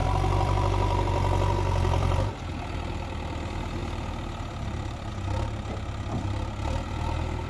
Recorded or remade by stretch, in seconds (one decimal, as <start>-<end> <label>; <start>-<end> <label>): 0.0-2.3 remade; 2.3-3.8 recorded; 3.8-5.1 remade; 5.1-7.5 recorded